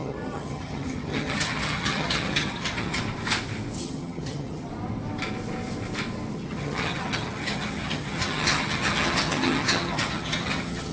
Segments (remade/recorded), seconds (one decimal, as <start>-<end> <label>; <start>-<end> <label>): 0.0-3.0 remade; 3.0-3.8 recorded; 3.8-4.7 remade; 4.7-6.3 recorded; 6.3-10.9 remade